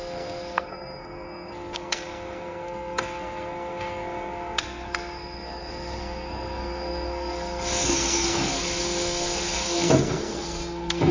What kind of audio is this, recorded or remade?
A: remade